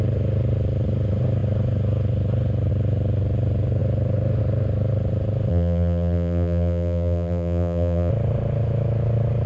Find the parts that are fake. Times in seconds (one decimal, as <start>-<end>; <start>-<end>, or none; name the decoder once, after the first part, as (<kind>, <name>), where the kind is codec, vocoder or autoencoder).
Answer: 5.5-8.1 (vocoder, BigVGAN v2)